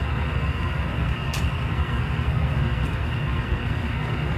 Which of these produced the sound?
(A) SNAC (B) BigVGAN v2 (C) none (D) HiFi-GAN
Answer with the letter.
A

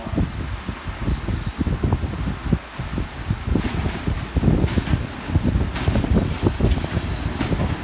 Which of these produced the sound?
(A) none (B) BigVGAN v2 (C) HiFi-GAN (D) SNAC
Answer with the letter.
A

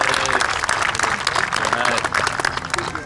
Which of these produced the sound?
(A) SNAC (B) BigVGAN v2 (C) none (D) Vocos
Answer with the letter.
C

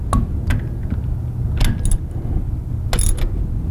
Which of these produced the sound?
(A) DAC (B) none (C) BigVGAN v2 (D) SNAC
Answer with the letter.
B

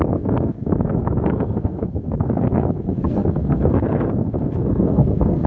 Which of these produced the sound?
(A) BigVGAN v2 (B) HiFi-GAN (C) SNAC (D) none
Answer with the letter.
C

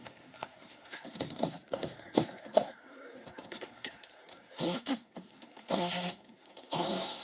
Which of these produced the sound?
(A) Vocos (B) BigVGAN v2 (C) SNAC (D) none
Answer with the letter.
C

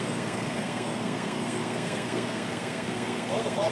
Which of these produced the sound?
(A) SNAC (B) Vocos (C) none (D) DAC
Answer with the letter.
A